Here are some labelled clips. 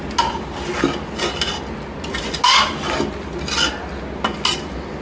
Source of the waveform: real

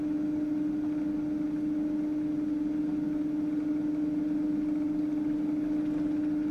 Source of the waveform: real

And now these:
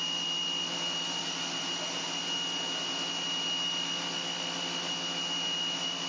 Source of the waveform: real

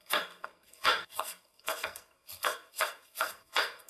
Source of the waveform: fake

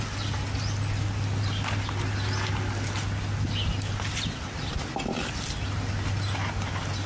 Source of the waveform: real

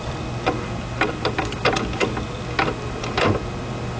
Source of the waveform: real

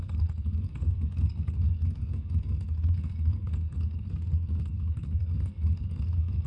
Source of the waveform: fake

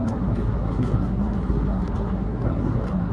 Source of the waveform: fake